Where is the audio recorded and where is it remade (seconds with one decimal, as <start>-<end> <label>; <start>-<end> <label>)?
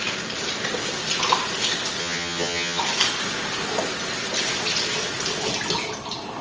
0.0-2.0 recorded; 2.0-2.8 remade; 2.8-6.4 recorded